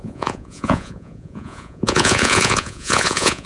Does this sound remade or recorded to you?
remade